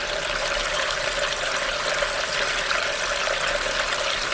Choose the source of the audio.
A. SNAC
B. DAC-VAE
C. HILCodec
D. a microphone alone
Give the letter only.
D